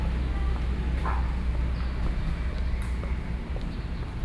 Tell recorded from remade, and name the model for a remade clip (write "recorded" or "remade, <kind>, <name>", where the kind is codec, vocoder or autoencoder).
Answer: recorded